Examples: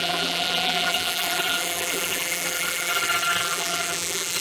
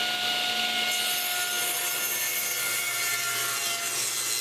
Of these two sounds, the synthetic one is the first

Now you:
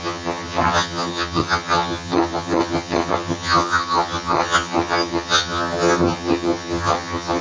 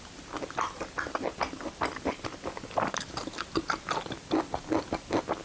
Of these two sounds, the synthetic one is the first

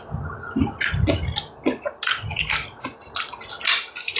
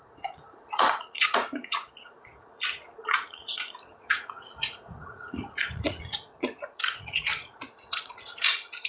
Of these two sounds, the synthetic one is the second